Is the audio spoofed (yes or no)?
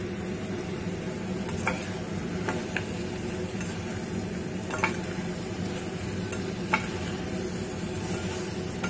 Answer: no